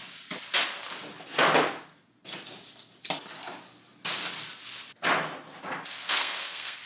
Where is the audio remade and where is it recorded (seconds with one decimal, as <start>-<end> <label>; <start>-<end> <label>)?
0.0-6.0 recorded; 6.0-6.8 remade